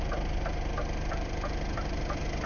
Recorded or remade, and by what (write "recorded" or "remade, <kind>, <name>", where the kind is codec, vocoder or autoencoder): remade, vocoder, BigVGAN v2